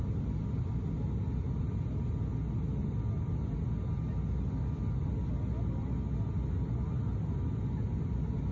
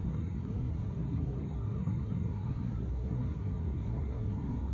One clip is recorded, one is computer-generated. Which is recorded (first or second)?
first